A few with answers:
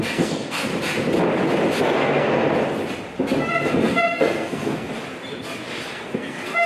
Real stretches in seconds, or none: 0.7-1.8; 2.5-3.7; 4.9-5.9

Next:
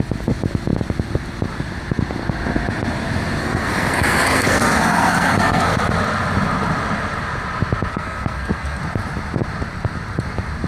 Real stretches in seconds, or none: 0.0-3.4; 5.8-7.9; 8.8-10.7

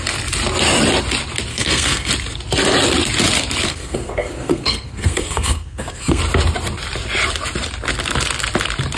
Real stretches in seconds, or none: 0.0-1.5; 2.1-3.7; 6.2-9.0

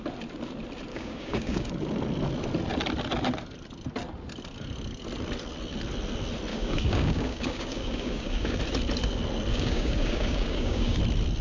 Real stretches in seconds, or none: 0.0-0.9; 1.7-6.5; 8.6-9.5; 11.0-11.4